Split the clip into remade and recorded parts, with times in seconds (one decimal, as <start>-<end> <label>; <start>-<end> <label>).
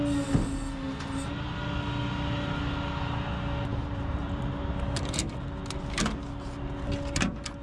0.0-3.7 recorded; 3.7-4.4 remade; 4.4-7.6 recorded